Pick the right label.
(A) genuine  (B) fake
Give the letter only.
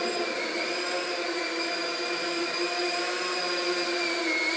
A